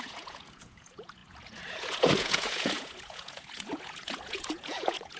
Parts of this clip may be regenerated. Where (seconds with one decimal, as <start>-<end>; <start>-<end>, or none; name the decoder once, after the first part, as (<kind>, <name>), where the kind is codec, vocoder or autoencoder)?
0.0-5.2 (vocoder, Vocos)